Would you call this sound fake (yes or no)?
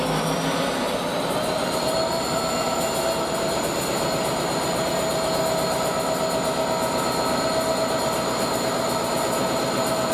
no